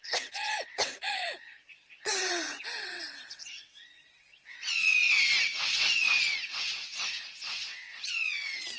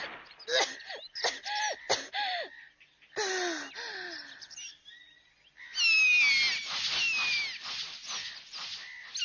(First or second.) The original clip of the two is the second